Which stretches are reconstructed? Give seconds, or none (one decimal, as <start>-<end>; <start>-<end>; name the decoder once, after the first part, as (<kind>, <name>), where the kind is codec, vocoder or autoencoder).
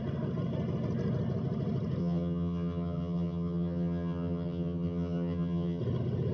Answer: 2.0-5.8 (vocoder, HiFi-GAN)